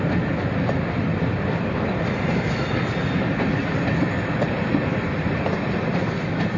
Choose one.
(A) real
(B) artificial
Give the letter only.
A